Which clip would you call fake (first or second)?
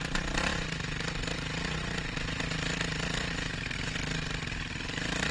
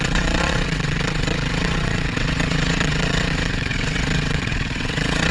second